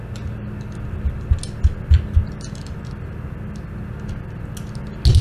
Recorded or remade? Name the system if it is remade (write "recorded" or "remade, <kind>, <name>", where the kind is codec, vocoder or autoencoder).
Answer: recorded